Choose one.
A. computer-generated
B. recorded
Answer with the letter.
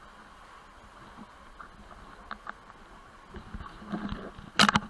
B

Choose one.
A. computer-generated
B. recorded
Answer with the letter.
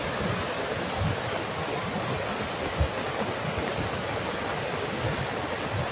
B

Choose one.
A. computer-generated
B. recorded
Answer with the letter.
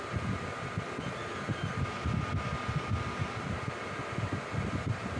B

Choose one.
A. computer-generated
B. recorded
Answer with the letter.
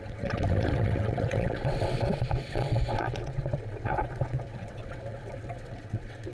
A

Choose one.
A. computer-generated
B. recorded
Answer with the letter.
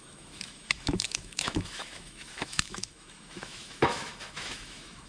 A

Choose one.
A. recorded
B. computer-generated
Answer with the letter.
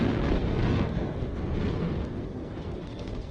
B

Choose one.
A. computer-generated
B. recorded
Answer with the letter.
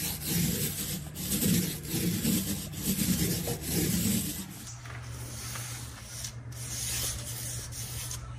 B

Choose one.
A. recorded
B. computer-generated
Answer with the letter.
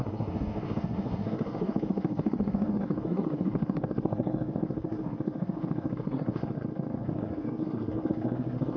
B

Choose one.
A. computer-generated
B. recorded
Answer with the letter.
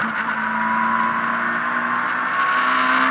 B